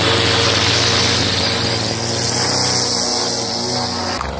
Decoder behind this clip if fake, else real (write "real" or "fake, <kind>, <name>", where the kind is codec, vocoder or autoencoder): real